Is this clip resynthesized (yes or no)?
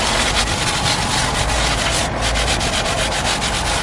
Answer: no